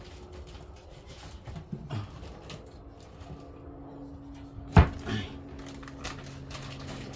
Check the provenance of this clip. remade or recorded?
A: recorded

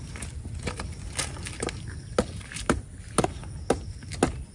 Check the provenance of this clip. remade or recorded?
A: recorded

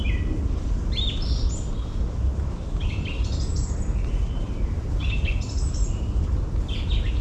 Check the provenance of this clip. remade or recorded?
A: recorded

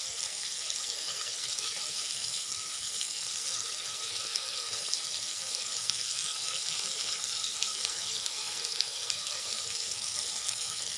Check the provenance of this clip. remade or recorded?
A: remade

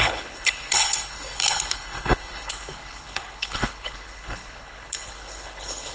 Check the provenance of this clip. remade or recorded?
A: remade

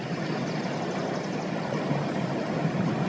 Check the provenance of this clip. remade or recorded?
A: recorded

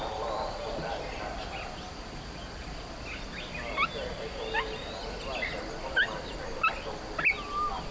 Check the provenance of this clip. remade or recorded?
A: recorded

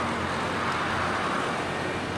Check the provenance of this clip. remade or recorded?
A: recorded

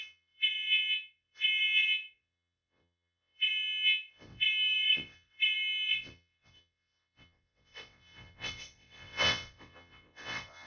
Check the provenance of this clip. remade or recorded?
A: remade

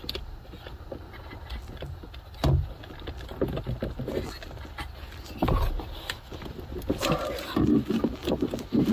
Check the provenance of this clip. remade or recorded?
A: recorded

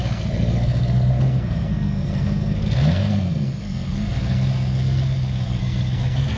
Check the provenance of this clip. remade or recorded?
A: remade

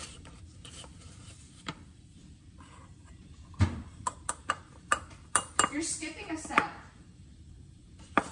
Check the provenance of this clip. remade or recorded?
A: remade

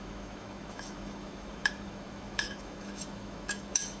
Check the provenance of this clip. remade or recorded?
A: remade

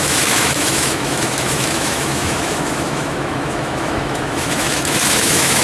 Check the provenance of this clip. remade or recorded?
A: remade